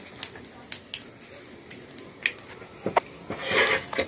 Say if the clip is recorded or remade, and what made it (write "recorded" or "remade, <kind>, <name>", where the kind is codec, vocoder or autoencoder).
recorded